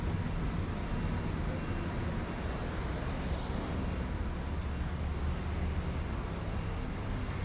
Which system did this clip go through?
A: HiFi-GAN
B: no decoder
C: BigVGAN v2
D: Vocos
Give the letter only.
B